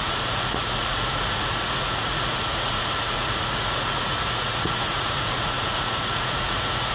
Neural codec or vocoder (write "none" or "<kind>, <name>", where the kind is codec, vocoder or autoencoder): vocoder, Vocos